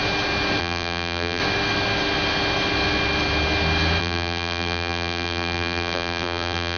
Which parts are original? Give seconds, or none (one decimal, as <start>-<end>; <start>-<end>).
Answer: 0.0-0.6; 1.4-4.0